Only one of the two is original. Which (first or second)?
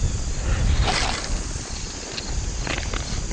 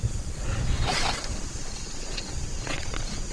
first